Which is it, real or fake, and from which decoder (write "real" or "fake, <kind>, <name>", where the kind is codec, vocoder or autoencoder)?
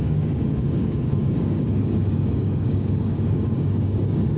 fake, codec, DAC